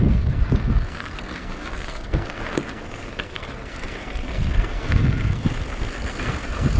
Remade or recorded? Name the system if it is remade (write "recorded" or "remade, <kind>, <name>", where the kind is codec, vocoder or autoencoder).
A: remade, codec, SNAC